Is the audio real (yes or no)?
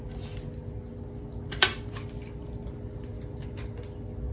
yes